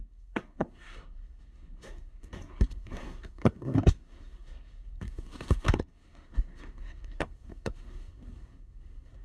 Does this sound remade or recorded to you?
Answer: remade